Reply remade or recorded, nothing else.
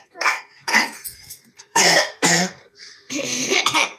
remade